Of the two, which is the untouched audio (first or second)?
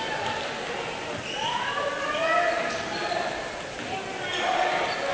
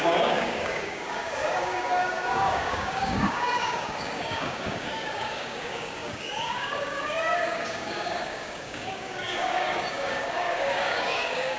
first